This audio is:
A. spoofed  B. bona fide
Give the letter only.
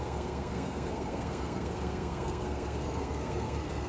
A